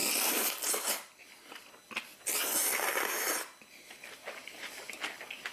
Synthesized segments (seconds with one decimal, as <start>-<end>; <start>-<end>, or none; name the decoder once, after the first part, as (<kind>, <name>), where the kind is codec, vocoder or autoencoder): none